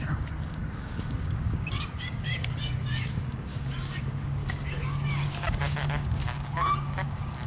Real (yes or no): no